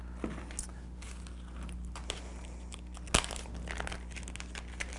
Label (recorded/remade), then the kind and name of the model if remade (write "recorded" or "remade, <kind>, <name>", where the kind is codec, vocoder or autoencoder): recorded